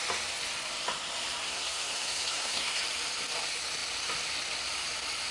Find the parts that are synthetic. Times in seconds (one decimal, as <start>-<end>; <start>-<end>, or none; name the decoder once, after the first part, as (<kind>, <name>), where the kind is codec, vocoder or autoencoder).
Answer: 1.4-2.8 (codec, SNAC)